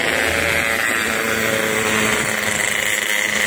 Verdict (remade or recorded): recorded